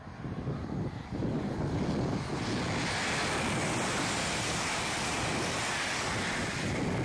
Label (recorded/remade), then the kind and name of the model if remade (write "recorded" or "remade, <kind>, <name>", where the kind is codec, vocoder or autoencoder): recorded